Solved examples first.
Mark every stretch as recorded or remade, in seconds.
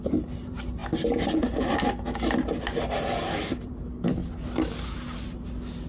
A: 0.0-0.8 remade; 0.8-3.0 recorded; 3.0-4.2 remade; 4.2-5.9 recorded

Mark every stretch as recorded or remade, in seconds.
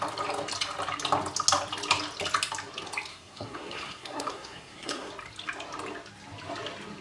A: 0.0-3.1 recorded; 3.1-5.1 remade; 5.1-7.0 recorded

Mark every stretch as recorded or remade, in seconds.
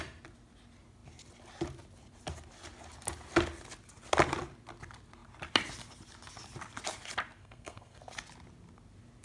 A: 0.0-7.4 recorded; 7.4-8.0 remade; 8.0-9.2 recorded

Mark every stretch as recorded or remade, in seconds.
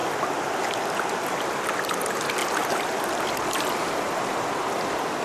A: 0.0-5.2 recorded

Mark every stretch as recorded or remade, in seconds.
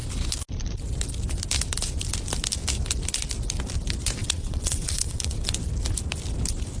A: 0.0-4.2 recorded; 4.2-5.5 remade; 5.5-6.8 recorded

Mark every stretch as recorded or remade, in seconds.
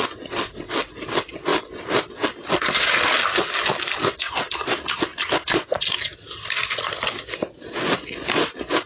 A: 0.0-1.5 recorded; 1.5-2.1 remade; 2.1-5.1 recorded; 5.1-5.8 remade; 5.8-8.9 recorded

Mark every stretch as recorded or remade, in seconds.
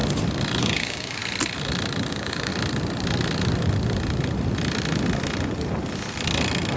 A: 0.0-0.6 recorded; 0.6-1.2 remade; 1.2-2.1 recorded; 2.1-2.5 remade; 2.5-6.8 recorded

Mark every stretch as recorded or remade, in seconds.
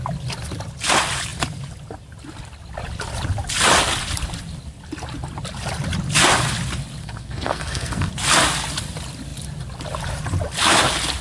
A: 0.0-7.0 recorded; 7.0-8.1 remade; 8.1-11.2 recorded